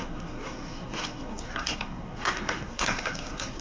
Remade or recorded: remade